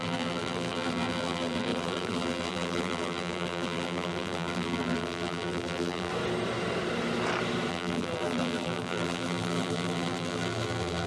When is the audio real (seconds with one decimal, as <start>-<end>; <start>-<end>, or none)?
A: 6.1-7.7